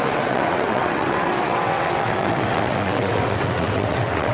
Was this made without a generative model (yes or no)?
no